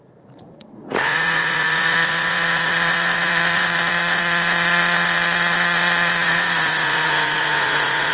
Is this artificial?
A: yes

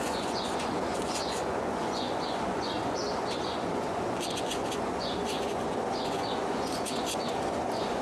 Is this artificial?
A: yes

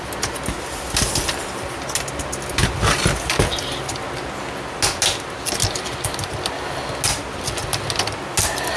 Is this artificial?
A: no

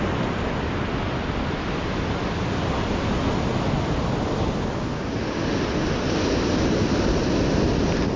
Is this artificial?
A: no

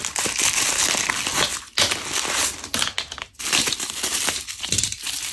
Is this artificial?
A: no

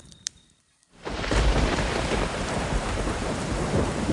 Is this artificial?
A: yes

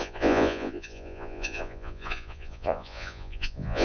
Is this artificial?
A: yes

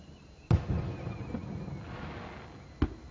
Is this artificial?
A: no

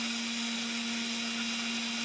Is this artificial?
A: no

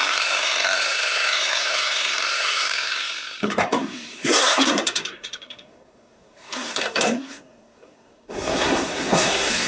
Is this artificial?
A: yes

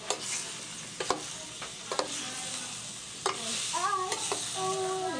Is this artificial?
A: no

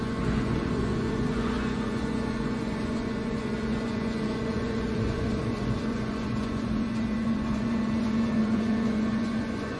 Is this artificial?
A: yes